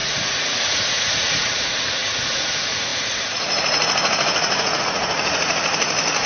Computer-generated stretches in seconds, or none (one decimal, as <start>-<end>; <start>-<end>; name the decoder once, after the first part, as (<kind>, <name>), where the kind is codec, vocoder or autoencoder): 0.0-6.3 (vocoder, Vocos)